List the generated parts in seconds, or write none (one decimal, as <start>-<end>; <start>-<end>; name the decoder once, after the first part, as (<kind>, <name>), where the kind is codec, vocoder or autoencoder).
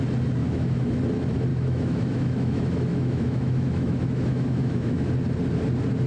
0.4-1.0 (autoencoder, DAC-VAE); 1.5-5.1